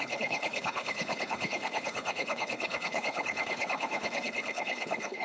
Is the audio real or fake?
fake